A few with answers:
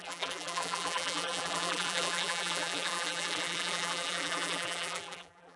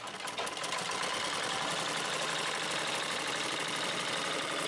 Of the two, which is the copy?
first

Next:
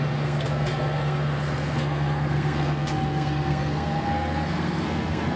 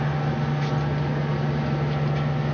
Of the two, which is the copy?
first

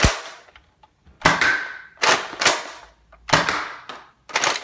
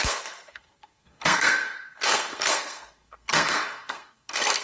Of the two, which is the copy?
second